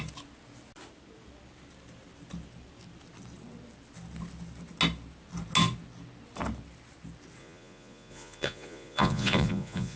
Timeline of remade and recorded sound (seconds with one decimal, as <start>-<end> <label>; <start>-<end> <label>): 0.0-7.4 recorded; 7.4-10.0 remade